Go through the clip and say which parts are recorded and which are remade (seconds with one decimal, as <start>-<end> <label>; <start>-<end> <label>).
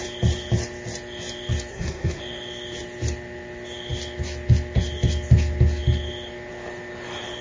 0.0-1.7 recorded; 1.7-2.2 remade; 2.2-7.4 recorded